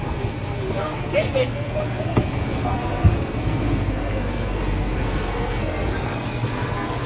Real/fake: fake